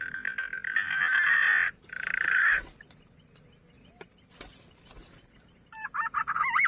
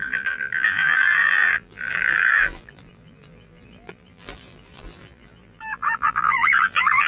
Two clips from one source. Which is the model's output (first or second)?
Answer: second